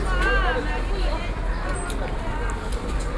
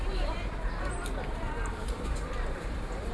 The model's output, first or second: second